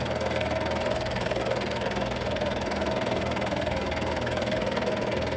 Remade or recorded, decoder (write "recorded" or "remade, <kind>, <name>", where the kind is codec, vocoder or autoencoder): remade, codec, SNAC